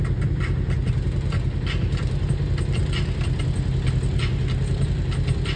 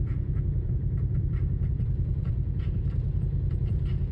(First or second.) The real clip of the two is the first